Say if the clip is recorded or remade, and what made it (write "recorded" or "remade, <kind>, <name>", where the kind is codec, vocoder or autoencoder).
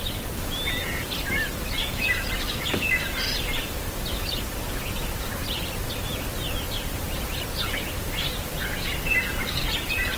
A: recorded